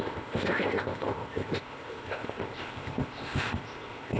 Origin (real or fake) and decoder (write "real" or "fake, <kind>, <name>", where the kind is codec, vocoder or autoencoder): fake, codec, ZipCodec